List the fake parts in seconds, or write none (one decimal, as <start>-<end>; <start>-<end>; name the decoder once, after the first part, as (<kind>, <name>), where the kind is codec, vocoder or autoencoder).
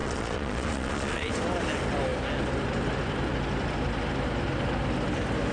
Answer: 0.0-1.3 (vocoder, Vocos)